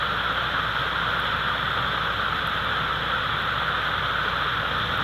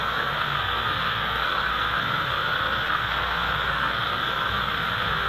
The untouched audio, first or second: first